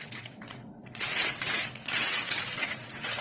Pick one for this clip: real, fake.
fake